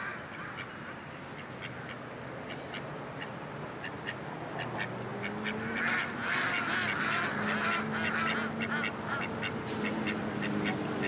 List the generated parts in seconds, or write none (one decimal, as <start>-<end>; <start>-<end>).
none